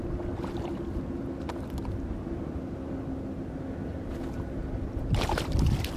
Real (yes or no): yes